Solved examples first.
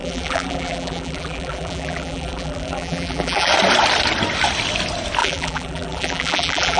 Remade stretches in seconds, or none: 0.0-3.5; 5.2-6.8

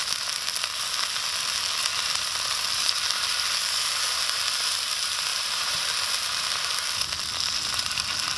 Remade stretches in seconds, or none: 5.3-5.9

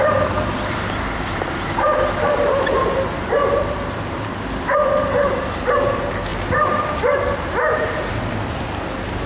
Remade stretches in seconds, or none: 0.0-6.3; 7.7-9.3

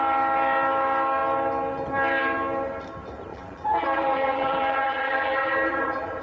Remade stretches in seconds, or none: 3.3-6.2

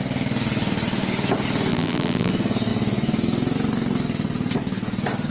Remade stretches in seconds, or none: 1.7-2.3

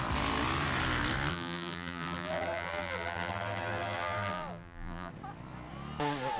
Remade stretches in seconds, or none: 1.3-5.1